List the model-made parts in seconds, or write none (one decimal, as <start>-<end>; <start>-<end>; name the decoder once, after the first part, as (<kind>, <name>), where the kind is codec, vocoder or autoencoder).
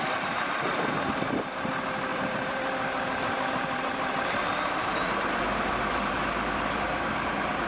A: 2.1-6.1 (vocoder, BigVGAN v2)